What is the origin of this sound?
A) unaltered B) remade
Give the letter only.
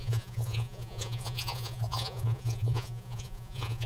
B